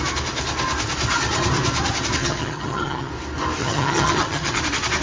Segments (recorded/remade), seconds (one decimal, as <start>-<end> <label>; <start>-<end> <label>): 0.0-2.2 recorded; 2.2-3.1 remade; 3.1-3.6 recorded; 3.6-4.6 remade; 4.6-5.0 recorded